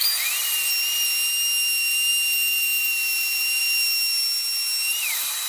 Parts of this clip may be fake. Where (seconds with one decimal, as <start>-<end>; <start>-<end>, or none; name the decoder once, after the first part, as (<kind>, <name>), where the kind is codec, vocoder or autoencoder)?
none